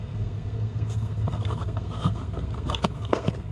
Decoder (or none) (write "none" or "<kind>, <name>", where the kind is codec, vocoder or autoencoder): codec, SNAC